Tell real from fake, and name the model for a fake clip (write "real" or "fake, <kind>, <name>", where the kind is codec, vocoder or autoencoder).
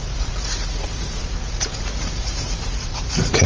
fake, vocoder, Vocos